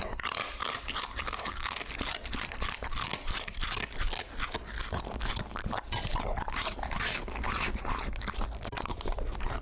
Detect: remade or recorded recorded